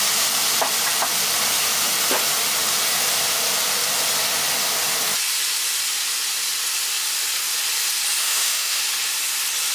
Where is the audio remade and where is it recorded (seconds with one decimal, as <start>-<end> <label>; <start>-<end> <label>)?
0.0-8.2 recorded; 8.2-8.8 remade; 8.8-9.7 recorded